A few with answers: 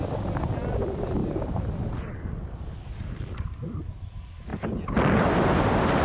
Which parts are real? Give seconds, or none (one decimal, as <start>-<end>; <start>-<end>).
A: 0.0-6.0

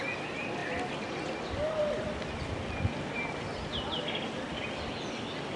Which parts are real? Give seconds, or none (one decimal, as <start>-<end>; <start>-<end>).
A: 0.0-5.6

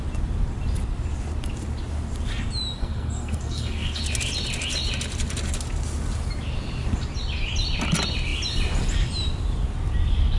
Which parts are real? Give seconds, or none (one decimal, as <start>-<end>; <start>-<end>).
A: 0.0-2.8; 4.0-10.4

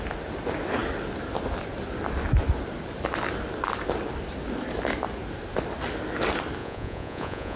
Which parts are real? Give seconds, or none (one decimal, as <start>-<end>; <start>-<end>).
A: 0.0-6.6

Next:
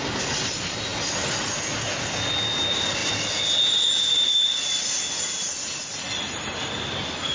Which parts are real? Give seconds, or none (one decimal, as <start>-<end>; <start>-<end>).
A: 0.0-7.3